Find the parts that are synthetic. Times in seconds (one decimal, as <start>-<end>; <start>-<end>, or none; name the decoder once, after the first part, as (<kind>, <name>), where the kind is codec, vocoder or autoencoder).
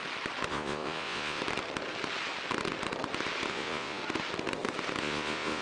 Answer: 0.5-1.4 (vocoder, Vocos); 3.5-4.0; 5.0-5.6